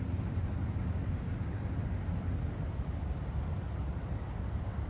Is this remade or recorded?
recorded